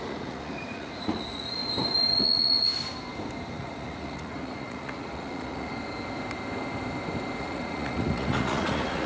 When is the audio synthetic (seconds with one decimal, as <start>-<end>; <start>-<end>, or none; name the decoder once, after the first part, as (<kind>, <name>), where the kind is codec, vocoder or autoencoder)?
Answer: 0.0-1.6 (vocoder, Vocos); 2.2-2.7; 3.5-5.7; 7.4-9.1